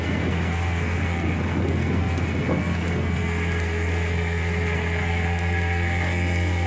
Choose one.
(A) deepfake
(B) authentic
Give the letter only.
A